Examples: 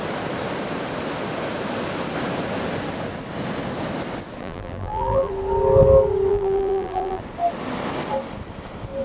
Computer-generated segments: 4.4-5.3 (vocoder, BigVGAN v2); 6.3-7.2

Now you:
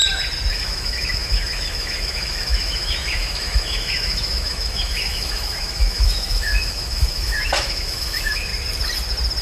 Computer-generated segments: 0.5-8.5 (autoencoder, DAC-VAE)

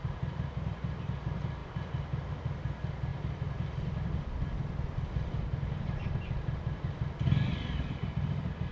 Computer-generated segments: 0.0-1.0 (vocoder, BigVGAN v2); 1.6-2.3

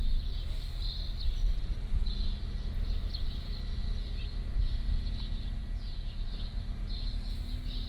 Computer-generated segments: 5.6-6.3 (vocoder, Vocos)

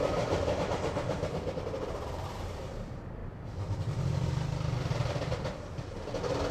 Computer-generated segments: 0.0-3.2 (vocoder, BigVGAN v2)

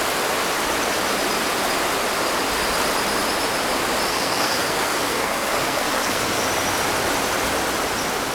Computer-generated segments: 4.1-6.4 (codec, SNAC)